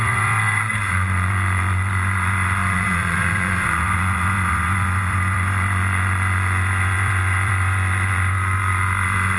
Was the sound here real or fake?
fake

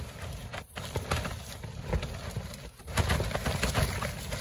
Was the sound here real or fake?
real